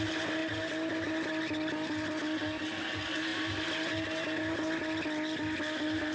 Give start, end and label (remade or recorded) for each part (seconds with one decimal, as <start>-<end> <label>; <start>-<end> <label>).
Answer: 0.0-6.1 recorded